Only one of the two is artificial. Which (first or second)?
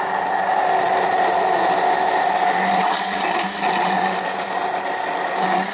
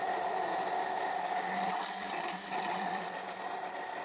second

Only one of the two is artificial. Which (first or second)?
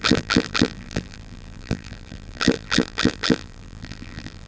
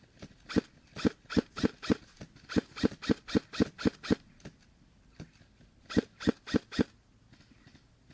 first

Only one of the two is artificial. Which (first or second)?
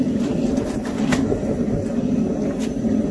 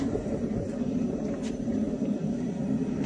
second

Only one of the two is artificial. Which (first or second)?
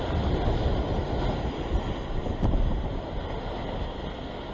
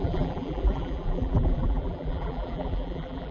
second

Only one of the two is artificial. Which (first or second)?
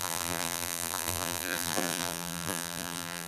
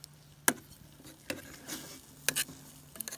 first